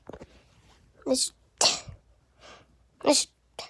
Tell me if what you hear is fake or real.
real